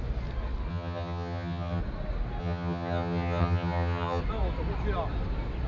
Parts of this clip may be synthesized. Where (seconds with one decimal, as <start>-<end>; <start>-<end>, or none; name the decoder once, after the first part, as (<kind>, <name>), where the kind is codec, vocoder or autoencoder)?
0.7-1.8 (vocoder, HiFi-GAN); 2.4-4.2

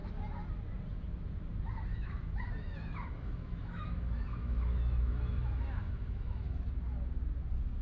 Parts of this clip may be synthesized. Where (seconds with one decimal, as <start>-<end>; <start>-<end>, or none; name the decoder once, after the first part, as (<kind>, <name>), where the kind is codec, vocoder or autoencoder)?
1.9-6.6 (autoencoder, DAC-VAE)